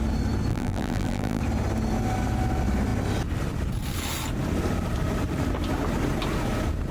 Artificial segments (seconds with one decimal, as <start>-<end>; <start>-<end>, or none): 0.5-1.4